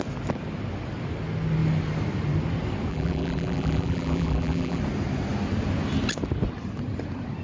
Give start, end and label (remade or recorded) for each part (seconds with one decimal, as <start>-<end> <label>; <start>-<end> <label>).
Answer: 0.0-2.9 recorded; 2.9-4.8 remade; 4.8-7.4 recorded